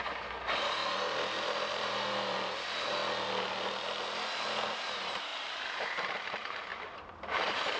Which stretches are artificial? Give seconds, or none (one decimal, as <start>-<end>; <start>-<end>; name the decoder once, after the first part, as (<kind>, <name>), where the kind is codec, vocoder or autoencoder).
0.0-0.8 (vocoder, BigVGAN v2); 1.7-3.0; 4.7-7.8